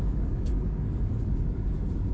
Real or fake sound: fake